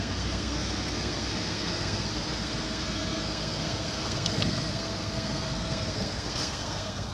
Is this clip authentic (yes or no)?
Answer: no